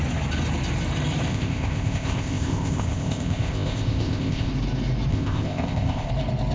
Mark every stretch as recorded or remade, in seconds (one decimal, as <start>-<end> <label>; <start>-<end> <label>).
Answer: 0.0-1.3 recorded; 1.3-4.5 remade; 4.5-5.1 recorded; 5.1-6.1 remade; 6.1-6.5 recorded

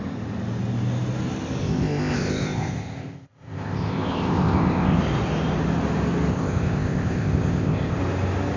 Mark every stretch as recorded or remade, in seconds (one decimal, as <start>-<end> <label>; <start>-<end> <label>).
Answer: 0.0-1.6 recorded; 1.6-5.0 remade; 5.0-6.3 recorded; 6.3-8.0 remade; 8.0-8.6 recorded

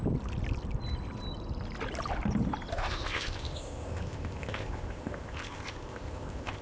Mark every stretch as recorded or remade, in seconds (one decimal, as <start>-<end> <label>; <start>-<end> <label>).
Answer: 0.0-2.7 recorded; 2.7-6.6 remade

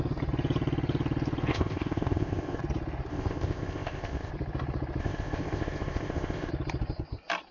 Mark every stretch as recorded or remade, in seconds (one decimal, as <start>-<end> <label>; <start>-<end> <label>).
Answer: 0.0-1.5 recorded; 1.5-2.6 remade; 2.6-3.1 recorded; 3.1-4.3 remade; 4.3-5.0 recorded; 5.0-6.5 remade; 6.5-7.5 recorded

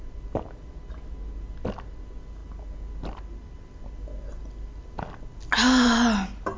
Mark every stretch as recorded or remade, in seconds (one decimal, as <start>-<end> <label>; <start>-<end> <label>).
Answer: 0.0-6.6 recorded

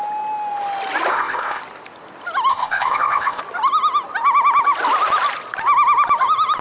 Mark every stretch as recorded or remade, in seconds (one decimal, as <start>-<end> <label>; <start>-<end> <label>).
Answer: 0.0-1.1 recorded; 1.1-1.6 remade; 1.6-2.5 recorded; 2.5-3.4 remade; 3.4-6.6 recorded

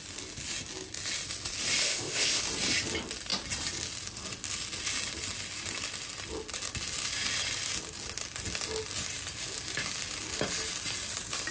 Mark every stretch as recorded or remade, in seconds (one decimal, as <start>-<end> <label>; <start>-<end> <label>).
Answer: 0.0-1.8 recorded; 1.8-2.4 remade; 2.4-11.5 recorded

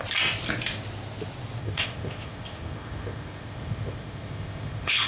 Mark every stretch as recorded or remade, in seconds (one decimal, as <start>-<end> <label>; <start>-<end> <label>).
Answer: 0.0-1.6 recorded; 1.6-5.1 remade